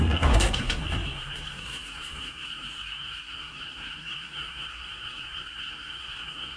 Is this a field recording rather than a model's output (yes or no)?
no